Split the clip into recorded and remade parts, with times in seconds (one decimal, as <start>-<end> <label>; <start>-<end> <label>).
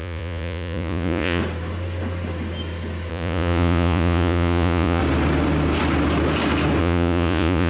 0.0-1.4 remade; 1.4-3.1 recorded; 3.1-5.0 remade; 5.0-6.8 recorded; 6.8-7.7 remade